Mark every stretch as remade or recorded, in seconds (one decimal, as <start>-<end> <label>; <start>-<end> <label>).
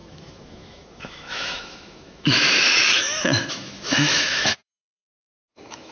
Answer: 0.0-5.9 remade